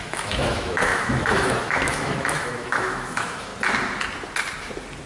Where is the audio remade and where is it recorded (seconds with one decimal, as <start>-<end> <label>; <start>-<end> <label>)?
0.0-3.5 remade; 3.5-5.1 recorded